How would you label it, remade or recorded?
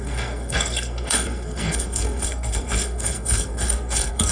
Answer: remade